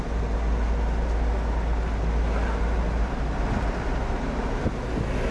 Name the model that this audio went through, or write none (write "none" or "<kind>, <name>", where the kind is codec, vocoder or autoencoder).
none